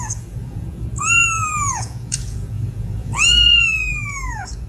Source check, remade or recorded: remade